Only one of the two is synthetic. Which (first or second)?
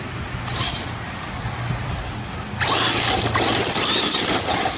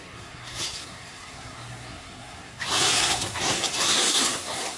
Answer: second